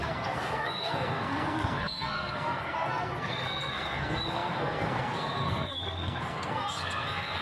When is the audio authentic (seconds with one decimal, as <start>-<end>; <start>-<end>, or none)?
none